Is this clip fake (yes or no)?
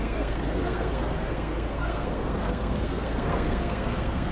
yes